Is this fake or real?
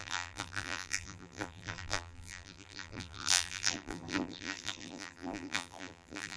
fake